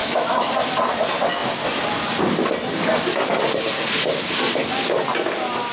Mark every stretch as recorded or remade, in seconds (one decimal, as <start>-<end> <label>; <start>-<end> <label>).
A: 0.0-0.5 remade; 0.5-5.7 recorded